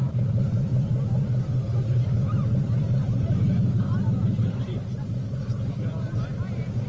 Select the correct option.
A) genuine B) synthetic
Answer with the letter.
B